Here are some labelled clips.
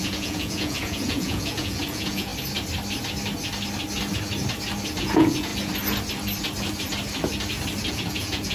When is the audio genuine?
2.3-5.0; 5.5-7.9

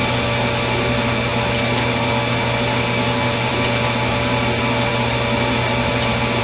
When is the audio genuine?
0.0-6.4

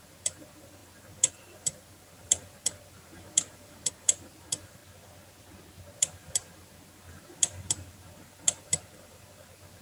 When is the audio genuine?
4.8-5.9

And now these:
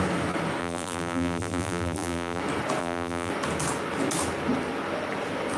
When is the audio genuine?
0.0-0.6; 2.4-2.8; 3.3-5.6